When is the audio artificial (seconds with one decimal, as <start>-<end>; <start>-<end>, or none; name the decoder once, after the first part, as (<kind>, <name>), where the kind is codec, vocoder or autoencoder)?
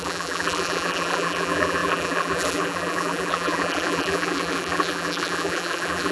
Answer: 0.0-6.1 (vocoder, BigVGAN v2)